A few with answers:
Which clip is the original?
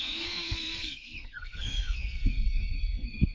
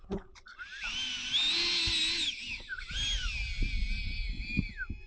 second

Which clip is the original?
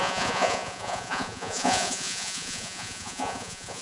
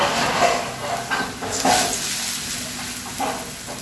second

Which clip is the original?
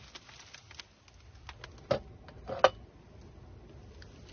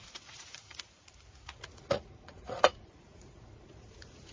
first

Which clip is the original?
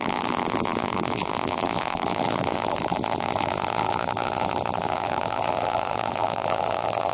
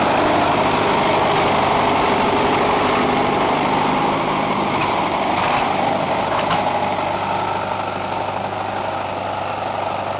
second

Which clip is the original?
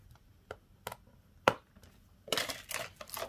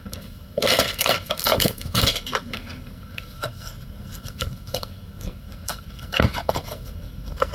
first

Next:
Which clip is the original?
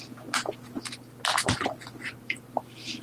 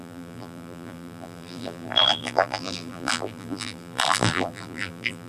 first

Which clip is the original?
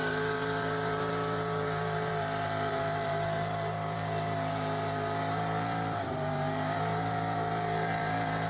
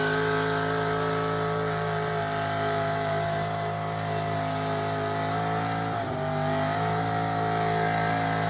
second